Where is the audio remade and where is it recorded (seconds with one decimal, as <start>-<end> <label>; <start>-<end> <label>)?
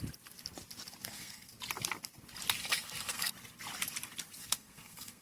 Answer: 0.0-1.0 recorded; 1.0-1.5 remade; 1.5-2.6 recorded; 2.6-3.3 remade; 3.3-4.4 recorded; 4.4-5.2 remade